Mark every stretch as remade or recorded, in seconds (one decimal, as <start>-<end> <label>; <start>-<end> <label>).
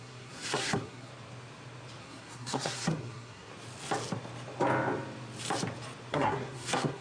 0.0-1.1 remade; 1.1-2.0 recorded; 2.0-3.5 remade; 3.5-6.1 recorded; 6.1-7.0 remade